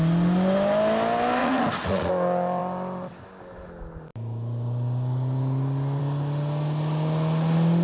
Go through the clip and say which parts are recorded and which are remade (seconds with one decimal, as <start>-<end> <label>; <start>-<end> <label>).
0.0-1.4 recorded; 1.4-2.1 remade; 2.1-7.8 recorded